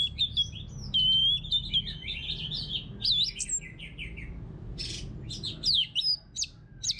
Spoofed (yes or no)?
no